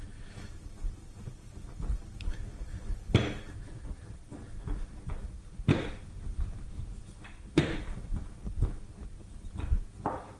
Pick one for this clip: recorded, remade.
recorded